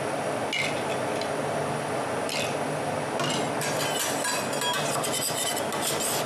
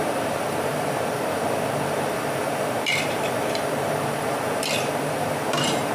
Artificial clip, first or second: second